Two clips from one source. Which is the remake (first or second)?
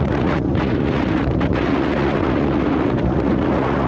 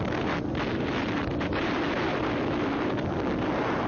first